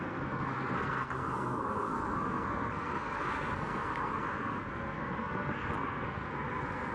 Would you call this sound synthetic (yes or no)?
yes